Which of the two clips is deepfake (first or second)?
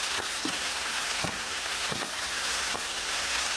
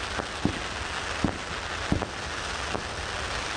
first